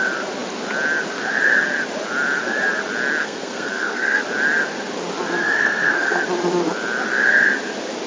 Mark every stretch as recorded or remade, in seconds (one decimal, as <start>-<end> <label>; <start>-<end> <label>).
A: 0.0-3.2 recorded; 3.2-4.2 remade; 4.2-5.4 recorded; 5.4-6.2 remade; 6.2-8.1 recorded